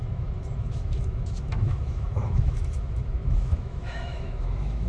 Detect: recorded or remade remade